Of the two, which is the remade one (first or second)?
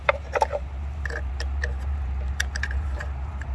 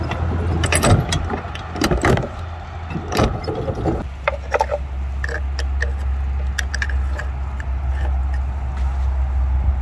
first